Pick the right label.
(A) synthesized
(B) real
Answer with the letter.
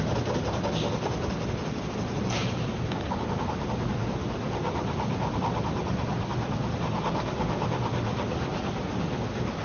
B